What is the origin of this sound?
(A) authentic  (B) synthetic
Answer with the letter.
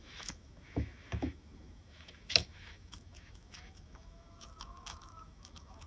B